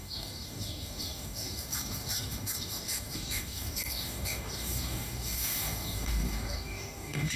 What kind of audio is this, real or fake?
fake